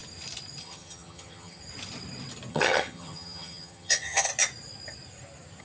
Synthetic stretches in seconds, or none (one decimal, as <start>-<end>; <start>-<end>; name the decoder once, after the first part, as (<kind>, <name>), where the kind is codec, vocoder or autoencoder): 0.6-1.6 (vocoder, HiFi-GAN); 2.5-4.3